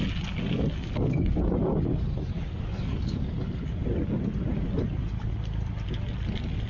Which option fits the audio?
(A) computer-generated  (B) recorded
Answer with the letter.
B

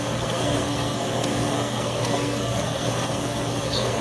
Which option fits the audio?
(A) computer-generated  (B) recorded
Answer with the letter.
A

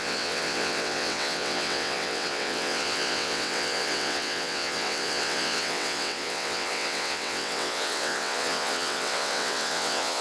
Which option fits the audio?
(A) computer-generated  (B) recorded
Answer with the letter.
A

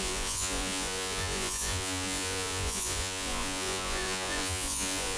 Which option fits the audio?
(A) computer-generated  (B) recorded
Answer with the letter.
A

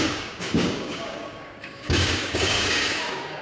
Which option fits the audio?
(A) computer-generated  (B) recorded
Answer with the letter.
A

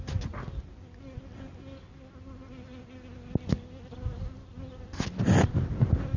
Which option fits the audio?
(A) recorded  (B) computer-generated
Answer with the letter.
A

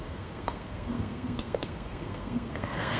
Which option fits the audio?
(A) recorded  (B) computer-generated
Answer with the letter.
B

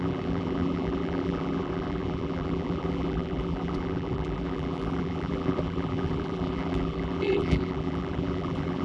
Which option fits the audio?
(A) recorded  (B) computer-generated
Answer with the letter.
B